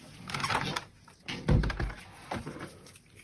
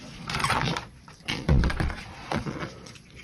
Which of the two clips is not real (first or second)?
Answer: second